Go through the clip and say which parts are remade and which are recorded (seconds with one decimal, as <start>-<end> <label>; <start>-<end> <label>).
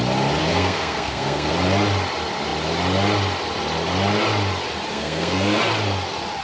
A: 0.0-0.4 recorded; 0.4-1.5 remade; 1.5-4.9 recorded; 4.9-5.6 remade; 5.6-6.4 recorded